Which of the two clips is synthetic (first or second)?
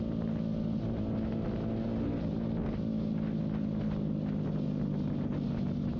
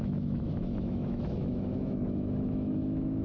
second